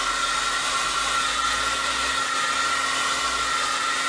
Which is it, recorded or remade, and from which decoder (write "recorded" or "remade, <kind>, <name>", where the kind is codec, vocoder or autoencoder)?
recorded